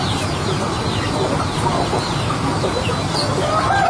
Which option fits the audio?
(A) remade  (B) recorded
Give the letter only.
B